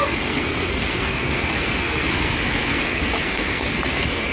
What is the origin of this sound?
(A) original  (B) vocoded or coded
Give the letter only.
B